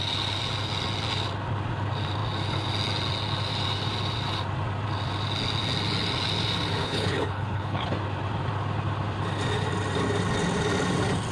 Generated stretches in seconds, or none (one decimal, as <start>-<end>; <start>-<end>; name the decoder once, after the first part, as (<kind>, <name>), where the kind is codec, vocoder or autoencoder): 6.8-7.9 (codec, HILCodec)